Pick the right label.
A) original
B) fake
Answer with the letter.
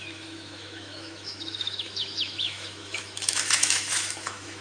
B